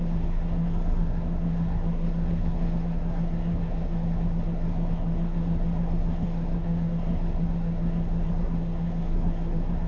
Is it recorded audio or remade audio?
remade